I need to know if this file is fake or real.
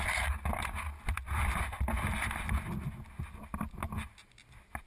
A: real